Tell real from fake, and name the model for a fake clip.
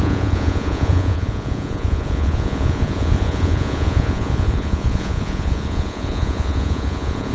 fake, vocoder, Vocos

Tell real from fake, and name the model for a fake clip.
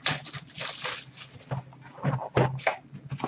real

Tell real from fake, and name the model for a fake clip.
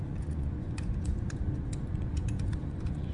fake, vocoder, Vocos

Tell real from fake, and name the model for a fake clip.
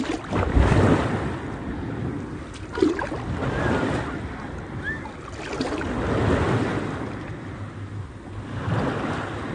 real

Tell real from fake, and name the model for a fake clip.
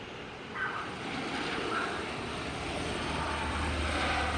real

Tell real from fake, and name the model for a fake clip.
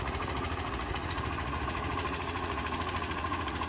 fake, vocoder, Vocos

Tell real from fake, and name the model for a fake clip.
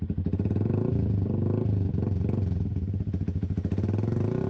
real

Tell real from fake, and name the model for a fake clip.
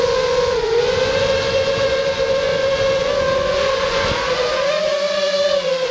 fake, vocoder, Vocos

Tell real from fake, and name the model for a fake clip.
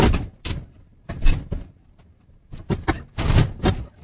real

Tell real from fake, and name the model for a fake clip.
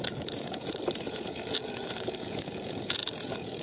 fake, vocoder, Vocos